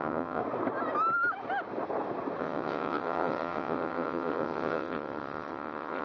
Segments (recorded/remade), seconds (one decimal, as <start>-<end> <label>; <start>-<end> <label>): 0.0-0.4 remade; 0.4-2.4 recorded; 2.4-6.0 remade